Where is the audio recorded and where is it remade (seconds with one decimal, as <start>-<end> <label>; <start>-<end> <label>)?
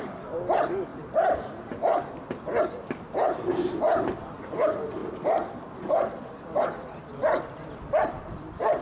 0.0-0.9 recorded; 0.9-2.0 remade; 2.0-8.8 recorded